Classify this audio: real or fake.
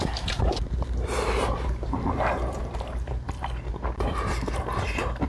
fake